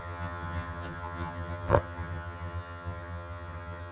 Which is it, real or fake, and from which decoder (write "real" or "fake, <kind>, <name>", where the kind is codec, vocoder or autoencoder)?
fake, vocoder, HiFi-GAN